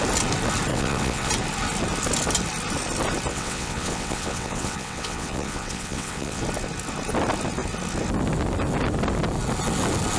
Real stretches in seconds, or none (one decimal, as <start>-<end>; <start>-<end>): 0.0-0.7; 1.3-3.3; 6.4-10.2

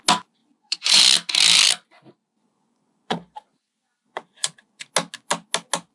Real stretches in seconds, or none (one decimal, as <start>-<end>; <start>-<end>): 0.0-0.4; 1.0-2.3; 4.9-5.9

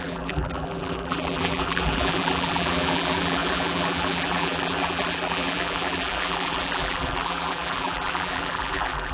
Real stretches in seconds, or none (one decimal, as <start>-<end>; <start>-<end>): none

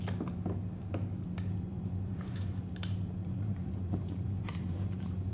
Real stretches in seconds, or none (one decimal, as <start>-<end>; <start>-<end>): 0.0-1.7; 2.6-3.2

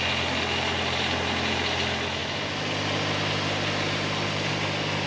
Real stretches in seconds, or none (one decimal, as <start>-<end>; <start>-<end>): 0.0-5.1

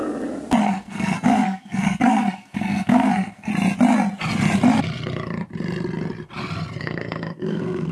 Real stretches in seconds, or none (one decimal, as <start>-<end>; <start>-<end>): 0.0-0.6; 3.5-6.8